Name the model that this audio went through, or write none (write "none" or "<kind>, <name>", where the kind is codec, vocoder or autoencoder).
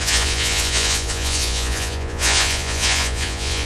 vocoder, Vocos